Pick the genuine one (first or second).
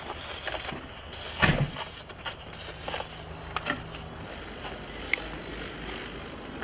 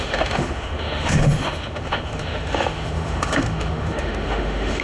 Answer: first